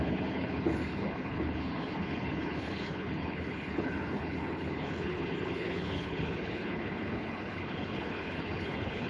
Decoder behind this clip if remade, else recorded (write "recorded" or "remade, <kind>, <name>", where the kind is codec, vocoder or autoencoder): remade, codec, HILCodec